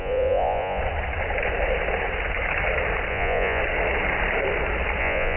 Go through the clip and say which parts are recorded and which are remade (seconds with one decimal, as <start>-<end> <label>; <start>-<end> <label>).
0.0-0.8 remade; 0.8-3.1 recorded; 3.1-3.6 remade; 3.6-5.0 recorded; 5.0-5.4 remade